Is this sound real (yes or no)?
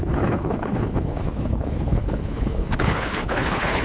no